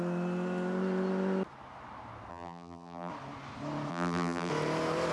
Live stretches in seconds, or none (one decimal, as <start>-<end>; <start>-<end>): 0.0-2.3; 3.1-3.9; 4.5-5.1